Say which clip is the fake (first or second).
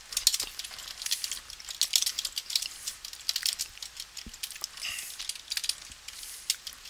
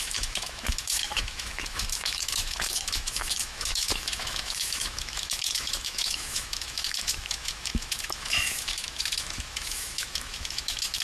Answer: second